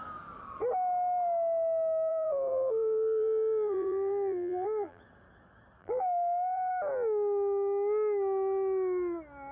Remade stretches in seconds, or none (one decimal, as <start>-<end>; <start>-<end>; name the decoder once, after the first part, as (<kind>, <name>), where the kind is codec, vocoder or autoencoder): 2.1-5.0 (vocoder, BigVGAN v2); 5.8-6.7